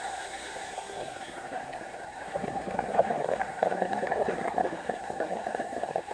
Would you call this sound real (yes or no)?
no